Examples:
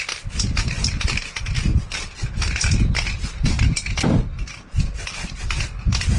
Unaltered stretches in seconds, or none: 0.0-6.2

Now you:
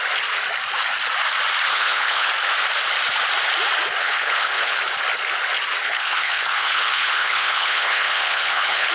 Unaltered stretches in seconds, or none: 0.0-1.7; 2.3-4.0; 4.8-5.8